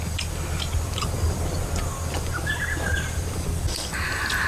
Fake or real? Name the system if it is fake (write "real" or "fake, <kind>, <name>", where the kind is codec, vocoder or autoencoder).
real